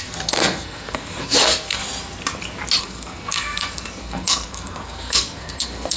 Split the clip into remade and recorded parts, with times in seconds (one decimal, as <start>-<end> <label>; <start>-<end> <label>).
0.0-1.8 remade; 1.8-2.8 recorded; 2.8-6.0 remade

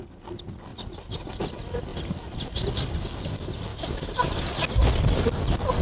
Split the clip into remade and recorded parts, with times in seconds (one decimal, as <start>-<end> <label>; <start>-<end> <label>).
0.0-0.7 recorded; 0.7-1.4 remade; 1.4-1.9 recorded; 1.9-2.6 remade; 2.6-3.7 recorded; 3.7-4.5 remade; 4.5-5.8 recorded

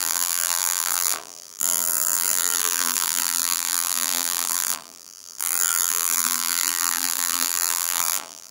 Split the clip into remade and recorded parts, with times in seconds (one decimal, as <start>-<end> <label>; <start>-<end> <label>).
0.0-8.5 remade

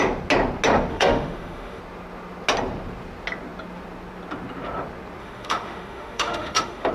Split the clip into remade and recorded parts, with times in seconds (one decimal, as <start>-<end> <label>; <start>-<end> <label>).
0.0-0.9 recorded; 0.9-1.8 remade; 1.8-5.2 recorded; 5.2-6.9 remade

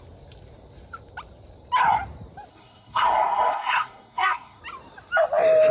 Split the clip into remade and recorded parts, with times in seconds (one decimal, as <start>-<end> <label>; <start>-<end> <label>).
0.0-2.5 recorded; 2.5-4.6 remade; 4.6-5.7 recorded

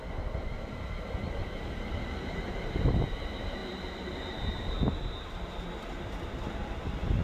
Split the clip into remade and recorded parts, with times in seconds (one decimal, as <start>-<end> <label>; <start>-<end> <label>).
0.0-7.2 recorded

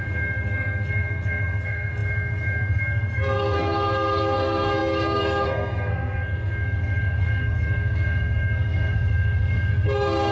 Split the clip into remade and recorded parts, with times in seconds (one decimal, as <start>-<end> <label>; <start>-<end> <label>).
0.0-10.3 remade

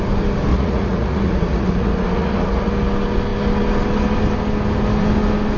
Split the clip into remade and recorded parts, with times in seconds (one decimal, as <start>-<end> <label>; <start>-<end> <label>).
0.0-0.5 recorded; 0.5-2.7 remade; 2.7-5.6 recorded